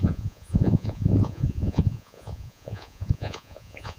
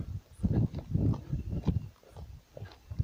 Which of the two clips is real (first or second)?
second